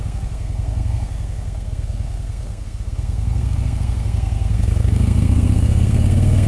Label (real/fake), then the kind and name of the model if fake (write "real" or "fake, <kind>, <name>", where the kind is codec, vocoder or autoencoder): fake, codec, SNAC